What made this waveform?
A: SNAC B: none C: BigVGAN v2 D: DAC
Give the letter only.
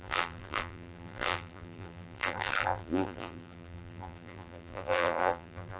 C